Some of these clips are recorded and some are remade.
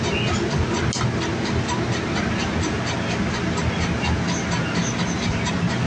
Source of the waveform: recorded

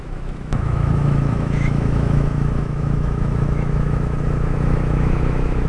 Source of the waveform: remade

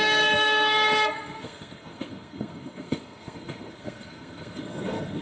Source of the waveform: remade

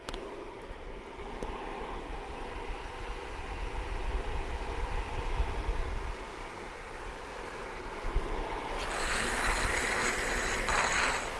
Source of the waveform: recorded